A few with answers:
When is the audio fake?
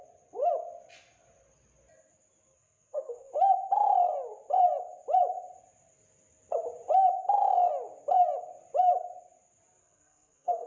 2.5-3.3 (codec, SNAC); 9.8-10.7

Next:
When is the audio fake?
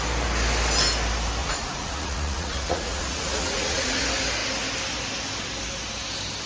1.4-4.0 (vocoder, Vocos)